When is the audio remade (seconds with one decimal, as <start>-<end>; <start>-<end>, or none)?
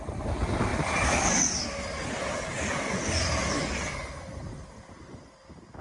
none